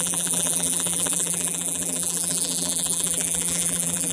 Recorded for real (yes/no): no